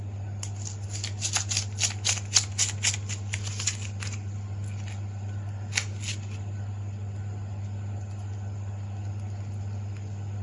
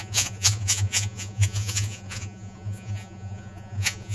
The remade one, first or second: second